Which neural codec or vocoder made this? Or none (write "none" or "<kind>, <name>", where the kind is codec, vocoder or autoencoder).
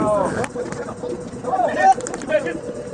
none